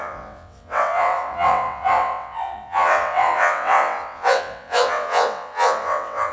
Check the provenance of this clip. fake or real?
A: fake